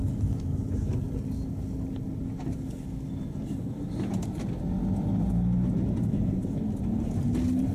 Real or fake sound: real